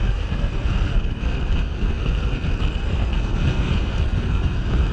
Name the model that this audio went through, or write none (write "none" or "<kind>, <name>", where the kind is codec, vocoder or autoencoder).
codec, SNAC